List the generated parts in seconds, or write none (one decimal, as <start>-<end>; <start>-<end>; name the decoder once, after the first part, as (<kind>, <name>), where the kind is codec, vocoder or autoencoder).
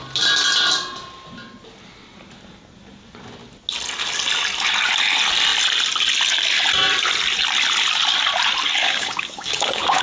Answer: 8.8-10.0 (codec, DAC)